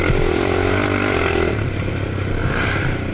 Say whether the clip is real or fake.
fake